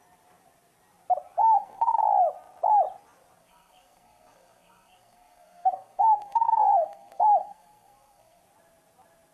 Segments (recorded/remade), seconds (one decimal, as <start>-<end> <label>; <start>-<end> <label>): 0.0-1.4 recorded; 1.4-2.0 remade; 2.0-3.4 recorded; 3.4-8.4 remade; 8.4-9.3 recorded